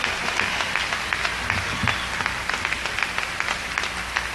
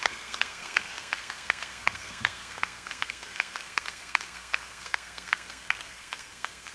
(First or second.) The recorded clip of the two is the first